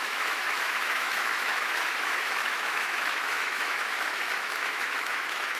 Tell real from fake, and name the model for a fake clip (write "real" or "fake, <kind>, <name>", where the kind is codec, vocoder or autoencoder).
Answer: fake, autoencoder, DAC-VAE